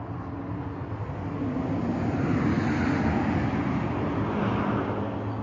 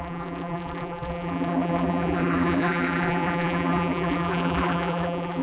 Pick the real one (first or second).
first